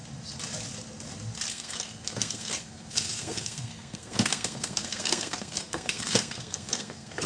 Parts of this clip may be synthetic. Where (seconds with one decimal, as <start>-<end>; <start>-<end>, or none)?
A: 1.5-7.3